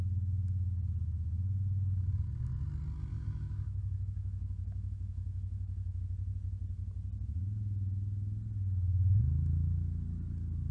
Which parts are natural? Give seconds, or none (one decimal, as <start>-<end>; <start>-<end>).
0.0-3.1; 6.0-10.7